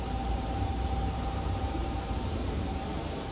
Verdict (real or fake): fake